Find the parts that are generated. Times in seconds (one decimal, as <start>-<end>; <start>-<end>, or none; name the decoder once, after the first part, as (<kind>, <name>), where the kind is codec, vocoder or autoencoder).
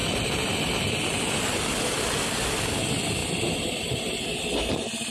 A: none